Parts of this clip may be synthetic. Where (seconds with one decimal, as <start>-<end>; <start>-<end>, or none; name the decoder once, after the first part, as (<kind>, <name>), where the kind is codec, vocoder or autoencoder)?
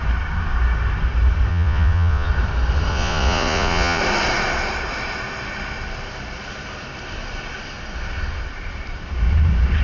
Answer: 1.5-2.3 (vocoder, Vocos); 2.9-4.0